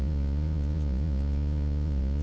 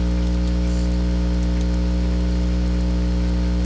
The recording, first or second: second